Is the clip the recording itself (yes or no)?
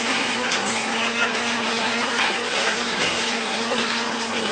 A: no